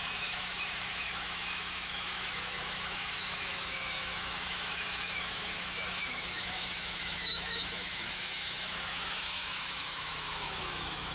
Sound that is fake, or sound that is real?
fake